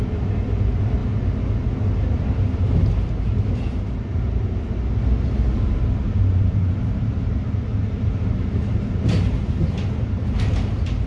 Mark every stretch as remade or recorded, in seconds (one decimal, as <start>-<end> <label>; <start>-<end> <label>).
0.0-6.3 recorded; 6.3-7.3 remade; 7.3-7.7 recorded; 7.7-9.2 remade; 9.2-11.1 recorded